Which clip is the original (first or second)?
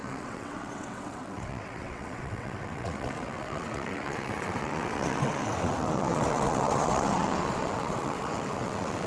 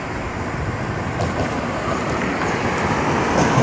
second